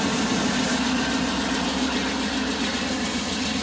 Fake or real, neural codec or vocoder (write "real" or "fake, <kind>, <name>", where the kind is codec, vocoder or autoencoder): real